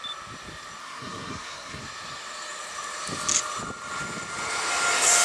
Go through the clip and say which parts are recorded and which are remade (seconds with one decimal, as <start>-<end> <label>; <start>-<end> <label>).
0.0-0.8 recorded; 0.8-1.8 remade; 1.8-5.2 recorded

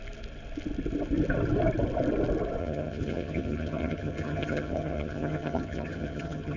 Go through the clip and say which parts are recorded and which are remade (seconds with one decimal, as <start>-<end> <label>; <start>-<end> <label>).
0.0-2.6 recorded; 2.6-6.6 remade